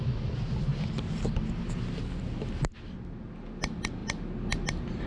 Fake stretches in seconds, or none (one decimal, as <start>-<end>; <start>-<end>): none